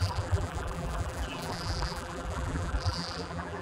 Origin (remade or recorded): remade